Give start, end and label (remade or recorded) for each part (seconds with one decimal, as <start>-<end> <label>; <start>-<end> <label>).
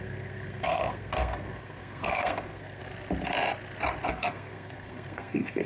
0.0-2.8 remade; 2.8-4.1 recorded; 4.1-5.7 remade